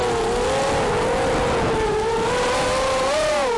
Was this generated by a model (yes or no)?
no